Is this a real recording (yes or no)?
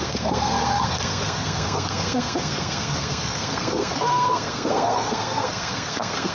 no